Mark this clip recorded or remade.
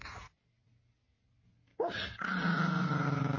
recorded